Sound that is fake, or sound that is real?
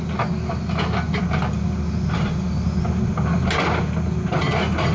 real